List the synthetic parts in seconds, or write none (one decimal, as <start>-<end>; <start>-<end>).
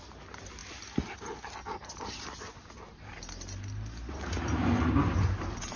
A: 0.0-0.6; 4.1-5.8